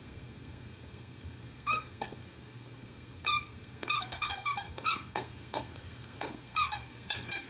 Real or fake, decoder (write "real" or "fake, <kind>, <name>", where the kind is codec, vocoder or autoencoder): fake, codec, SNAC